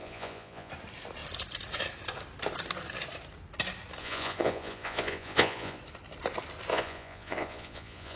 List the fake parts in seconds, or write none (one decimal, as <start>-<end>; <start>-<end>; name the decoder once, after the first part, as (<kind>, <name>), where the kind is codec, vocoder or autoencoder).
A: 0.0-0.7 (vocoder, Vocos); 4.0-5.8; 6.7-8.2